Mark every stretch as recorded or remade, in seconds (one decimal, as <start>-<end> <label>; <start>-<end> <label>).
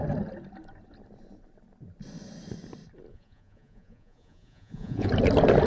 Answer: 0.0-3.1 recorded; 3.1-5.1 remade; 5.1-5.7 recorded